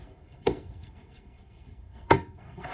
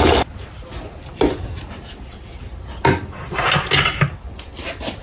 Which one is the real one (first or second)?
second